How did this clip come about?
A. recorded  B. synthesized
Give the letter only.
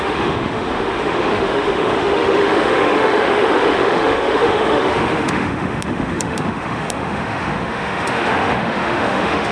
B